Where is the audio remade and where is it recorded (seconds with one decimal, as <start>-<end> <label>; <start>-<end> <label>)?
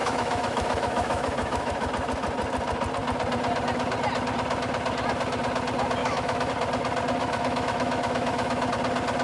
0.0-1.9 remade; 1.9-6.0 recorded; 6.0-6.5 remade; 6.5-7.2 recorded; 7.2-8.7 remade; 8.7-9.2 recorded